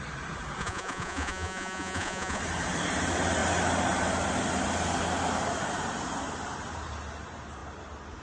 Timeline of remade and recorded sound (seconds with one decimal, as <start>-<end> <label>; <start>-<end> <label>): 0.0-0.6 recorded; 0.6-2.4 remade; 2.4-8.2 recorded